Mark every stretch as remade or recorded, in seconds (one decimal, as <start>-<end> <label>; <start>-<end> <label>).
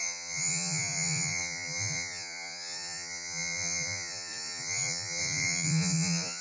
0.0-6.4 remade